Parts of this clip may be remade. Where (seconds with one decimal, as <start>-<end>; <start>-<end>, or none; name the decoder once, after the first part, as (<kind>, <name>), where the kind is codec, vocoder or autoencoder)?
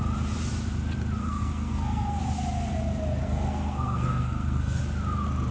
1.2-2.2 (codec, SNAC); 3.2-4.8